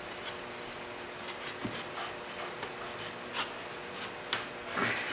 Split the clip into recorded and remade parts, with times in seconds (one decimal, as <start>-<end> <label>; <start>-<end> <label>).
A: 0.0-5.1 recorded